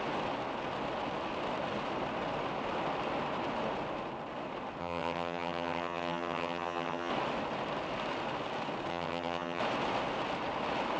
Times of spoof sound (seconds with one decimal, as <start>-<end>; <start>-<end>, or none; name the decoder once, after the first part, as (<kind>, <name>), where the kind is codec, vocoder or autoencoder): 4.8-7.1 (vocoder, HiFi-GAN); 8.9-9.6